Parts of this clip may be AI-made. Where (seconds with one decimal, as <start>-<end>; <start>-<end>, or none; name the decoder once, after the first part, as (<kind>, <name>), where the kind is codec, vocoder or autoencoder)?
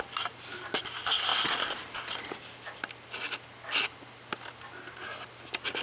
none